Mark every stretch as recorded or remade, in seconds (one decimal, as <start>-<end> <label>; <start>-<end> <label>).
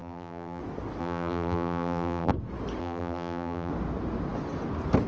0.0-0.6 remade; 0.6-1.0 recorded; 1.0-2.3 remade; 2.3-2.8 recorded; 2.8-3.7 remade; 3.7-5.1 recorded